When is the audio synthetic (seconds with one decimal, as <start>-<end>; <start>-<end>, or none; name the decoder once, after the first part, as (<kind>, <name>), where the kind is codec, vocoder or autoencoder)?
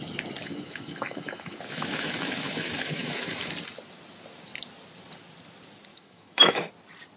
0.4-3.5 (autoencoder, DAC-VAE); 5.9-6.7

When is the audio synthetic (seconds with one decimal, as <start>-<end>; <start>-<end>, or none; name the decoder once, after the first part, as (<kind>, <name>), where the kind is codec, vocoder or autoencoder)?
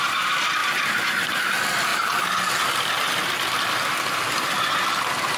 none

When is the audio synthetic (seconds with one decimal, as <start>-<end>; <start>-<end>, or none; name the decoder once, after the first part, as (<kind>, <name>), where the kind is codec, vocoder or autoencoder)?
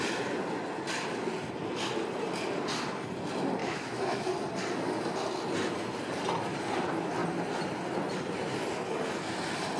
3.6-4.3 (autoencoder, DAC-VAE)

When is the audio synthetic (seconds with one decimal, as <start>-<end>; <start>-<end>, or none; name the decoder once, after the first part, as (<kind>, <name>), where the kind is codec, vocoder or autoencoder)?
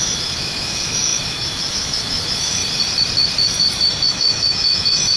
0.0-2.6 (autoencoder, DAC-VAE); 4.1-5.2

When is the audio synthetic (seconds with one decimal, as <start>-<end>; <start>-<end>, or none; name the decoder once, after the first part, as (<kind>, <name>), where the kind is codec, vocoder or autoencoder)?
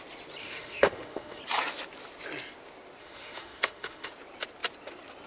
0.4-1.4 (autoencoder, DAC-VAE); 3.0-4.1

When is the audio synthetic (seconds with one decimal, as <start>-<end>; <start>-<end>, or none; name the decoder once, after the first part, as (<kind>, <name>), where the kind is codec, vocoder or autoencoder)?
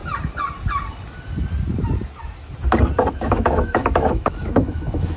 3.1-5.2 (autoencoder, DAC-VAE)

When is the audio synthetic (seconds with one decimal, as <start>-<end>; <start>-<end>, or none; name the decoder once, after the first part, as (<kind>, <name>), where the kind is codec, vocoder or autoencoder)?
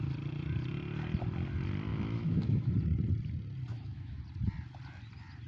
1.9-2.7 (autoencoder, DAC-VAE); 3.7-4.2